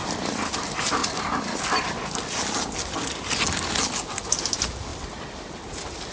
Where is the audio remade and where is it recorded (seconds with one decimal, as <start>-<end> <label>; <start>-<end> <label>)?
0.0-6.1 recorded